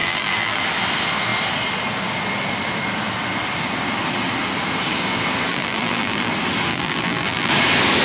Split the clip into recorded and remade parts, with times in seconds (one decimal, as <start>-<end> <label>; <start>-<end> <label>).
0.0-0.6 remade; 0.6-5.5 recorded; 5.5-6.3 remade; 6.3-6.7 recorded; 6.7-7.5 remade; 7.5-8.0 recorded